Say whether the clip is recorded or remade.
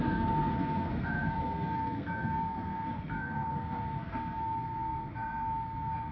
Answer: remade